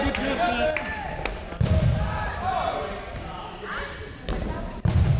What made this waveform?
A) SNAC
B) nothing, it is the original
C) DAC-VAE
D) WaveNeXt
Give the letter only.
B